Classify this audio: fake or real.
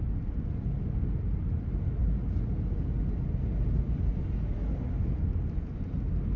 real